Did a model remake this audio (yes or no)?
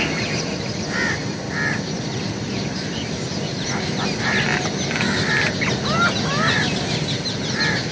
no